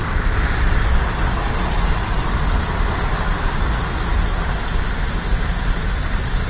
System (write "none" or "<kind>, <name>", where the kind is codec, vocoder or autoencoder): none